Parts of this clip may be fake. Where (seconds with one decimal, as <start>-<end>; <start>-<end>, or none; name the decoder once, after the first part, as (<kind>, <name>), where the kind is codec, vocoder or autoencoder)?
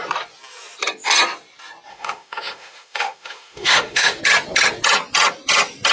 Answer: 1.9-4.2 (autoencoder, DAC-VAE)